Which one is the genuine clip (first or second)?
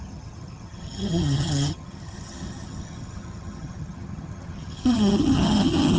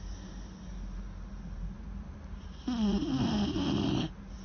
second